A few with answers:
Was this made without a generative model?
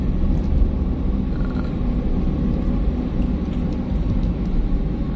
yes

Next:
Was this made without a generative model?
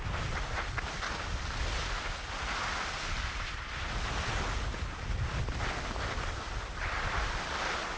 yes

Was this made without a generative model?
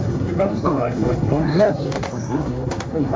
no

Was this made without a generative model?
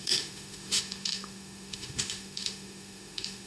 no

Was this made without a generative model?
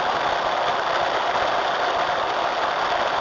yes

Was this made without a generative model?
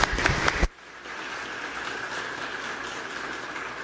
yes